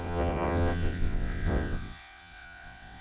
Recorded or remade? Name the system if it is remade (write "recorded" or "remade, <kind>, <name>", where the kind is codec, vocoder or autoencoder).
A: remade, vocoder, WaveNeXt